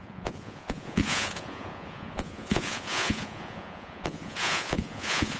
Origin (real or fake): fake